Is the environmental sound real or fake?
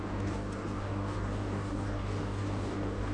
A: fake